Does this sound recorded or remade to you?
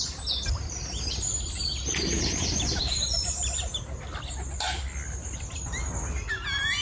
recorded